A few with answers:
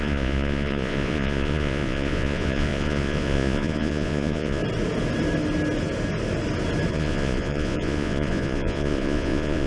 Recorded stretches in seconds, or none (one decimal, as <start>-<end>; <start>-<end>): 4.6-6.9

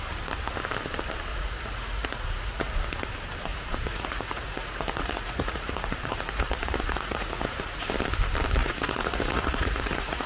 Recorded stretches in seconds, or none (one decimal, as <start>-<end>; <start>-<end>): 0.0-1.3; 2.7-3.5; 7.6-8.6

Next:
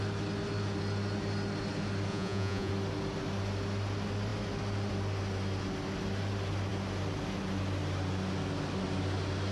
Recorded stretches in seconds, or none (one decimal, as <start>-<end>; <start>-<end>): 0.0-2.1; 2.7-9.5

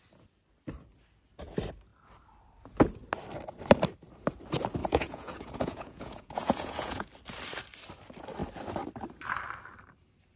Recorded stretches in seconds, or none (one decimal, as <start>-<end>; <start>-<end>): 0.0-4.8; 7.1-10.4

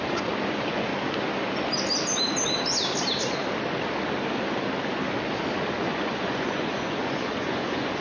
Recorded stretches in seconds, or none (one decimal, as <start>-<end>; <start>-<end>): 0.9-5.7

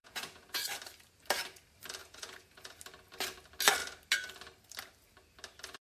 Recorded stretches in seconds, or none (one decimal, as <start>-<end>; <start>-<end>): 0.6-2.0; 2.8-5.8

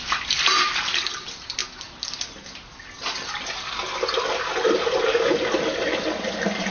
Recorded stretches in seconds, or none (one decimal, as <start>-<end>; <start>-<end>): 0.0-6.7